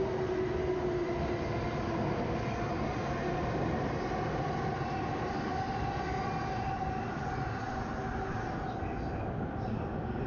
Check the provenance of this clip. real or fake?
real